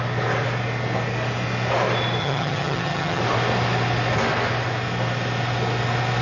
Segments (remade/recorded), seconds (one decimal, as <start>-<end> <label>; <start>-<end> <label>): 0.0-2.2 recorded; 2.2-3.2 remade; 3.2-6.2 recorded